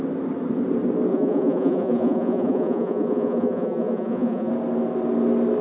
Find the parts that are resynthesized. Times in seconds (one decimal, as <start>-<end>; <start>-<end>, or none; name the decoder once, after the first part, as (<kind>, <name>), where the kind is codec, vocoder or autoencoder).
1.1-4.5 (vocoder, Vocos)